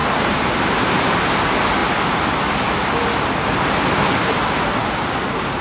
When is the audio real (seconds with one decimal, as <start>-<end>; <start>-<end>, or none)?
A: 1.0-4.8